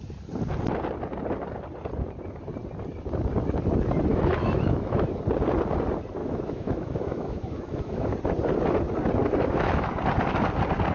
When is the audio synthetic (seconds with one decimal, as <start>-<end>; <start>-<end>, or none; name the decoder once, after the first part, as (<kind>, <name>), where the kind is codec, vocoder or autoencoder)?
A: 4.1-5.2 (autoencoder, DAC-VAE); 6.2-8.1; 9.2-10.0